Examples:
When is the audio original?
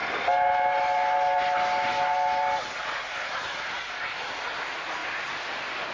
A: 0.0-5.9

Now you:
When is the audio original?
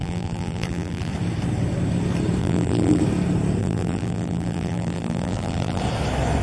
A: 1.1-2.4; 3.0-3.6; 5.8-6.4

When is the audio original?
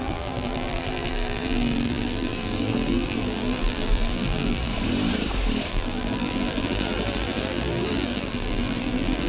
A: 4.7-5.7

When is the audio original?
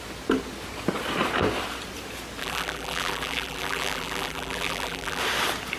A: 0.0-2.4; 5.2-5.8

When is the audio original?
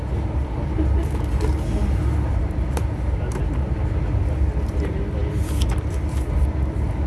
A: 0.0-2.3; 3.4-7.1